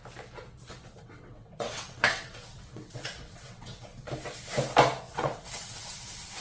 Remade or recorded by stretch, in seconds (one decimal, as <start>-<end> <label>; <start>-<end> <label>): 0.0-1.0 recorded; 1.0-3.9 remade; 3.9-5.0 recorded; 5.0-6.4 remade